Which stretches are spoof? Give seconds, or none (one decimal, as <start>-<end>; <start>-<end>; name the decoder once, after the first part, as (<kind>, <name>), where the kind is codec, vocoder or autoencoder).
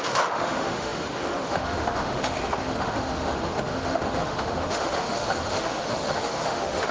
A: 0.0-6.9 (autoencoder, DAC-VAE)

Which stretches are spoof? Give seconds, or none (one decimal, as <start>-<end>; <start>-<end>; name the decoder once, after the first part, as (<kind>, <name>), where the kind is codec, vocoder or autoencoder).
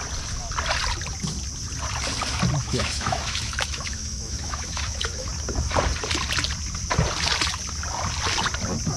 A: 2.6-5.3 (autoencoder, DAC-VAE)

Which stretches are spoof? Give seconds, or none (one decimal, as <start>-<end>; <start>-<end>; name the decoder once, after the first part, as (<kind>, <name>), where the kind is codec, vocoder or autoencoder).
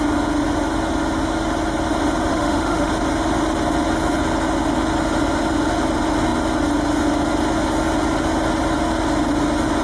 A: 2.3-2.9 (autoencoder, DAC-VAE)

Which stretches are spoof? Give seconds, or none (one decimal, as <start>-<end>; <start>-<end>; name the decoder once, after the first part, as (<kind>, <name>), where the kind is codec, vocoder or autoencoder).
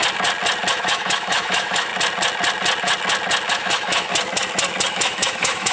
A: 0.7-1.9 (autoencoder, DAC-VAE); 3.5-4.1; 4.9-5.7